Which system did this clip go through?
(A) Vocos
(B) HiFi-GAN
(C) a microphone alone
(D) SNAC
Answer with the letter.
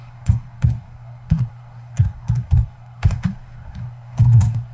D